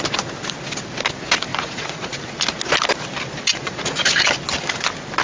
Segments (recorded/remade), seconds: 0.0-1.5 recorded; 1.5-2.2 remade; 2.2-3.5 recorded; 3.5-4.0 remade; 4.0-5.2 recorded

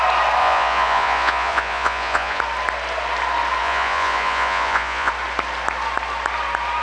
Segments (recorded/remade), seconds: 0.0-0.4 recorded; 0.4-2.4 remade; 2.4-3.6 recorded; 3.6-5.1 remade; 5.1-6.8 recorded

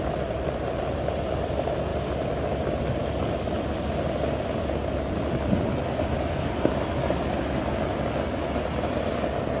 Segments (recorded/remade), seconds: 0.0-9.6 recorded

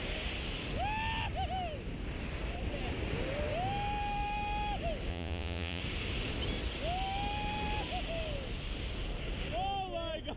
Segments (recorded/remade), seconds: 0.0-5.1 recorded; 5.1-5.8 remade; 5.8-10.4 recorded

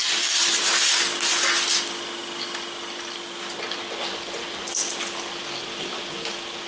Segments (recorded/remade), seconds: 0.0-0.7 remade; 0.7-6.7 recorded